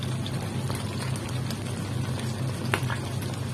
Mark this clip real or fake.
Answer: real